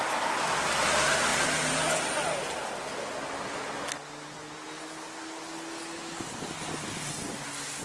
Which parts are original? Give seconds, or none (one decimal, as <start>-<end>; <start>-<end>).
0.0-7.8